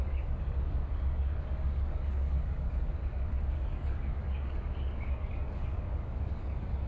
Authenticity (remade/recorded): remade